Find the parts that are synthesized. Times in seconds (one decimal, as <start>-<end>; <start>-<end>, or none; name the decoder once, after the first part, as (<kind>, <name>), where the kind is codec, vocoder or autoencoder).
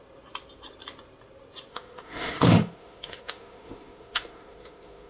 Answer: 1.7-5.1 (autoencoder, DAC-VAE)